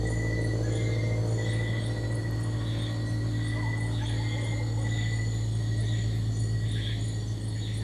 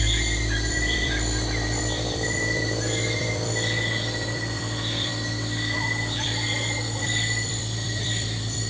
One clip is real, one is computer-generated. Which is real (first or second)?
first